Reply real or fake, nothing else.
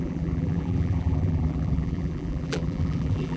fake